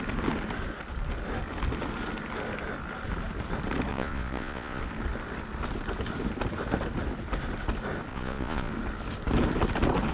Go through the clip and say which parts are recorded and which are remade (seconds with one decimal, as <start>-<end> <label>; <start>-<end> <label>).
0.0-3.9 recorded; 3.9-4.8 remade; 4.8-8.1 recorded; 8.1-8.7 remade; 8.7-10.1 recorded